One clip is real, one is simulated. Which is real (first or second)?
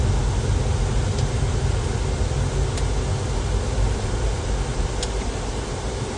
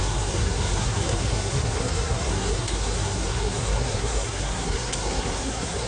first